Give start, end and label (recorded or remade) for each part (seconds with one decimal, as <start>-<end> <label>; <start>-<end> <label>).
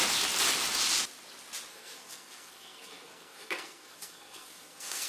0.0-1.7 recorded; 1.7-5.1 remade